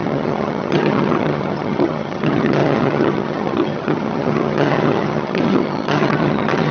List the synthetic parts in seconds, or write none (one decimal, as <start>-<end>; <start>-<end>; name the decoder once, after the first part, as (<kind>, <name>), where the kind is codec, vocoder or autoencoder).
0.0-6.7 (vocoder, HiFi-GAN)